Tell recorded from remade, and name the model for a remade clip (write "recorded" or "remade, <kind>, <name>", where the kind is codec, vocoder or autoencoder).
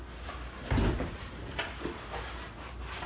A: recorded